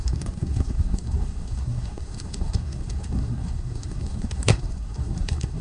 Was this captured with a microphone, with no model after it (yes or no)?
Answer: no